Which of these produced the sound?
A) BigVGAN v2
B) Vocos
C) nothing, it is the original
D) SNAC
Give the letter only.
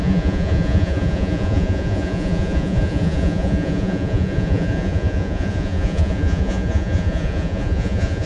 B